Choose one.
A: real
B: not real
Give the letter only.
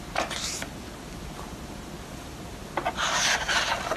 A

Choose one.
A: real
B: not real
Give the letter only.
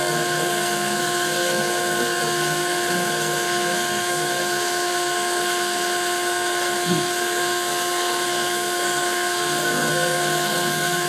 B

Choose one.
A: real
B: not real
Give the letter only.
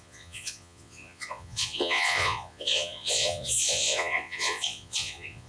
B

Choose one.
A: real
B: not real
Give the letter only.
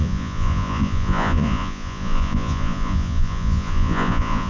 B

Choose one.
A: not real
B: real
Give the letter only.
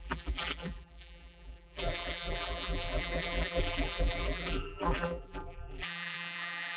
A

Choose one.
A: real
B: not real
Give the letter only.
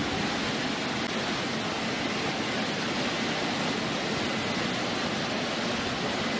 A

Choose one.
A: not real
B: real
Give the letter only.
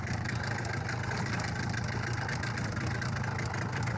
B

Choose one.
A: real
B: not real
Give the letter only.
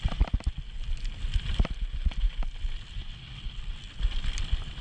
A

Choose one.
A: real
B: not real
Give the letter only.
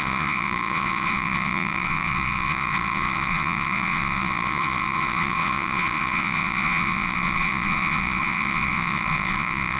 B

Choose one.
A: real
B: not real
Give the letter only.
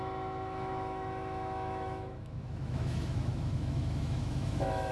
B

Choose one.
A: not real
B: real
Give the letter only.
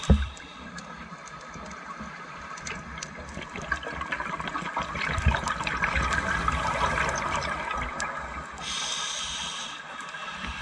B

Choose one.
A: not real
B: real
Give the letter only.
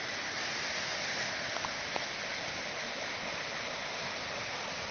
B